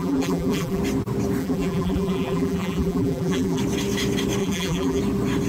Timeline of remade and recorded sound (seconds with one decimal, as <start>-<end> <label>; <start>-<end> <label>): 0.0-0.8 remade; 0.8-1.4 recorded; 1.4-3.6 remade; 3.6-4.4 recorded; 4.4-5.0 remade; 5.0-5.5 recorded